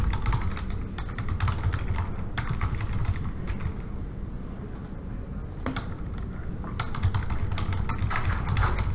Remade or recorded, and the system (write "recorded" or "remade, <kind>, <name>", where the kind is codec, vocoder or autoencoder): recorded